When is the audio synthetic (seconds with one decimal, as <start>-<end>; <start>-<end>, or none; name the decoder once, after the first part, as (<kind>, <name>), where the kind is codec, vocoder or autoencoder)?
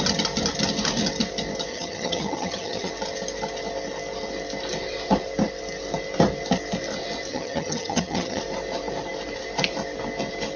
1.7-2.9 (vocoder, HiFi-GAN); 7.3-8.4